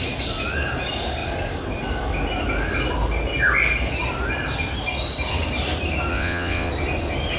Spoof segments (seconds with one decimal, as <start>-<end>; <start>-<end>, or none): 6.1-6.7